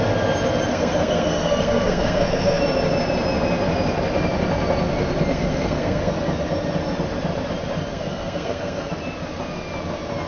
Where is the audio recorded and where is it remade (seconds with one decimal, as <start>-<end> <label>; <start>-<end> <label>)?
0.0-0.7 recorded; 0.7-2.6 remade; 2.6-5.3 recorded; 5.3-6.1 remade; 6.1-7.9 recorded; 7.9-8.9 remade; 8.9-10.3 recorded